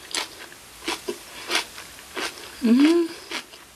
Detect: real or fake real